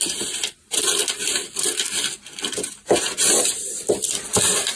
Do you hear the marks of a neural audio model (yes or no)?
yes